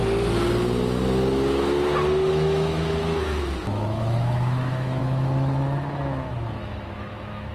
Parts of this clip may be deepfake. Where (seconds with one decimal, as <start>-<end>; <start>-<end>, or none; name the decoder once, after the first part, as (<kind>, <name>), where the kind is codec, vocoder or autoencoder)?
2.3-7.5 (autoencoder, DAC-VAE)